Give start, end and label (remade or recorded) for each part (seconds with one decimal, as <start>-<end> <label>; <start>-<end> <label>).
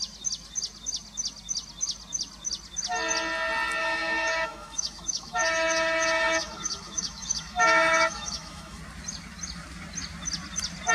0.0-3.8 recorded; 3.8-8.8 remade; 8.8-10.9 recorded